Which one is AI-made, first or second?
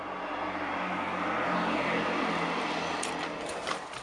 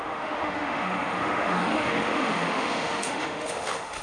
second